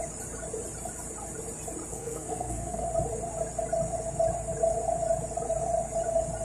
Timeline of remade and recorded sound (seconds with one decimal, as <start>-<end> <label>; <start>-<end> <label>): 0.0-1.9 recorded; 1.9-2.9 remade; 2.9-6.4 recorded